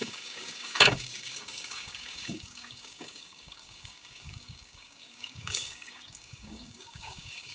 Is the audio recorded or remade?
remade